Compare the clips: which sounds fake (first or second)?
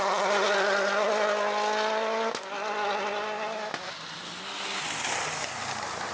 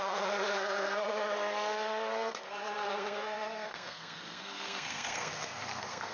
second